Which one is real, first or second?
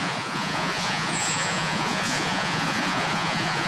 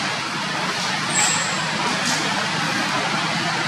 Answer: second